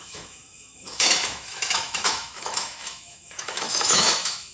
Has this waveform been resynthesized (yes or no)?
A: yes